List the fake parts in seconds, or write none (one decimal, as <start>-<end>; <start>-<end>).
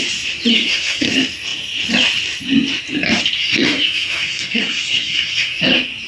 0.5-1.1; 3.4-5.6